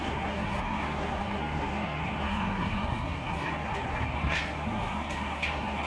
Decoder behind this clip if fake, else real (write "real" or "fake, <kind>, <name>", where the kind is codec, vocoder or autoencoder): fake, codec, SNAC